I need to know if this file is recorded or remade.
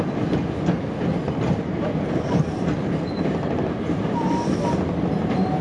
recorded